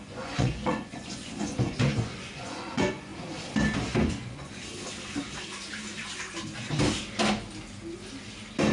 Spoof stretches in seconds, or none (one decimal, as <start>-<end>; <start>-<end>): 0.0-3.1; 4.1-4.6